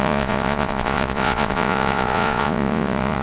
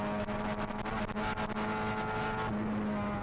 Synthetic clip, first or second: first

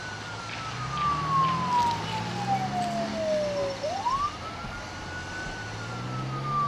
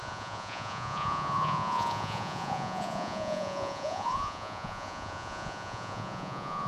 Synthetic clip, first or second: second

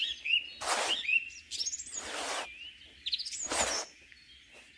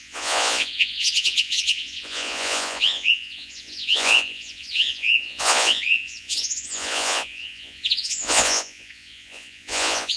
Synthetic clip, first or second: second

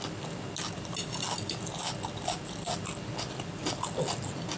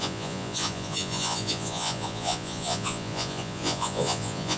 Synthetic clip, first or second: second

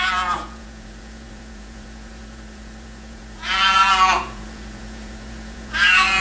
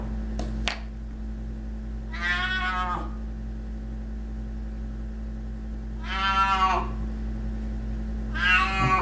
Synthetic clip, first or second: first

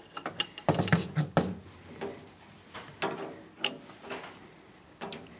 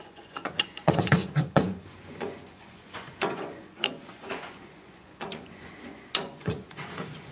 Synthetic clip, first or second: second